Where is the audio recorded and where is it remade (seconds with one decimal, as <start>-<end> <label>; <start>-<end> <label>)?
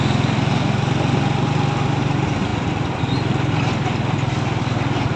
0.0-5.2 recorded